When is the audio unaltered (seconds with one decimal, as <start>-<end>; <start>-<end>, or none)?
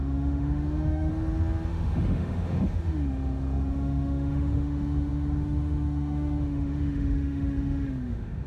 1.1-1.7